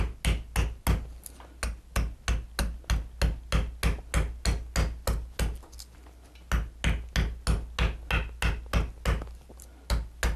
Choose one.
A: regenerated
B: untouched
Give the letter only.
B